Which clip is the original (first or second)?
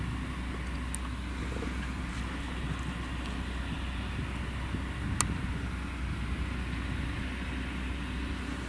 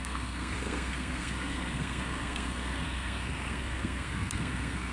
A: first